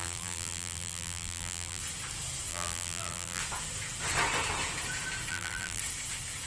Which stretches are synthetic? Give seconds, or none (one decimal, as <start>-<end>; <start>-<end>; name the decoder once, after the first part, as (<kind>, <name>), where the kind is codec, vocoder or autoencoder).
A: 0.0-1.8 (vocoder, BigVGAN v2); 2.5-3.4; 5.3-5.8